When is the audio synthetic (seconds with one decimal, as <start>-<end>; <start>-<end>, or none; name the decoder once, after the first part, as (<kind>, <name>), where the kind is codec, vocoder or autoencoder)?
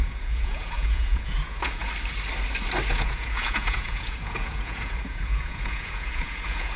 0.0-1.8 (vocoder, Vocos); 2.9-6.8